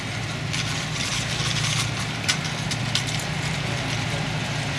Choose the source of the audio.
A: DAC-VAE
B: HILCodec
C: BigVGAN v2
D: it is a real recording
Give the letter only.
C